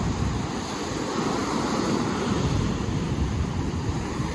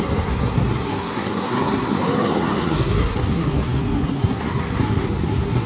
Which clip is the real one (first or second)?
first